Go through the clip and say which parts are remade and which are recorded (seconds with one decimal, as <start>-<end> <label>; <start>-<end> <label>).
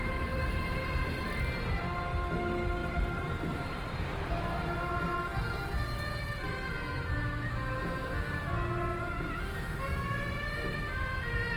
0.0-1.0 remade; 1.0-2.8 recorded; 2.8-3.9 remade; 3.9-9.9 recorded; 9.9-10.5 remade; 10.5-11.6 recorded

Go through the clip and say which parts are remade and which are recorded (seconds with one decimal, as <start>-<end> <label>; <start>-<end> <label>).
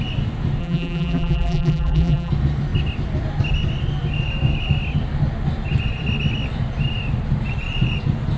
0.0-0.6 recorded; 0.6-2.3 remade; 2.3-8.4 recorded